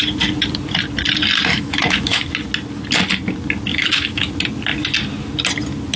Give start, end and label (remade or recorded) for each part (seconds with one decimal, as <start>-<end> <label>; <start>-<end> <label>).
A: 0.0-1.5 recorded; 1.5-2.3 remade; 2.3-3.7 recorded; 3.7-4.3 remade; 4.3-6.0 recorded